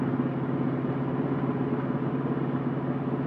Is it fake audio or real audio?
real